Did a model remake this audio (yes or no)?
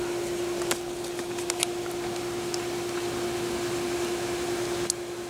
no